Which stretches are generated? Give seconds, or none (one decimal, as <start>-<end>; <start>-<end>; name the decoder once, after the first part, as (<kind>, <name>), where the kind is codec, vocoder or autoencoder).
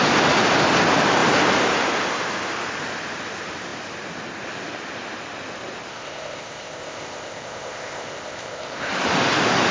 5.9-8.9 (codec, ZipCodec)